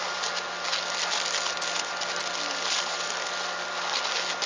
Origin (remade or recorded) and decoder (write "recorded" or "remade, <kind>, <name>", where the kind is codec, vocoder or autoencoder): recorded